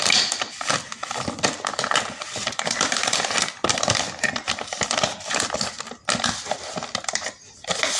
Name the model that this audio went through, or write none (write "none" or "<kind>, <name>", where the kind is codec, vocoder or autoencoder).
none